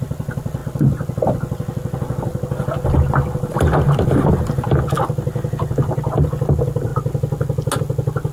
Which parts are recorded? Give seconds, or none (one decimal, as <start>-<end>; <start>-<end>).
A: 0.0-8.3